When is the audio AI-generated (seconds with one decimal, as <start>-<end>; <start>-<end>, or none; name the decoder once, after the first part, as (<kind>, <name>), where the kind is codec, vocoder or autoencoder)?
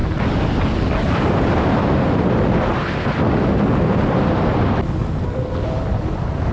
3.9-5.0 (vocoder, BigVGAN v2); 5.7-6.5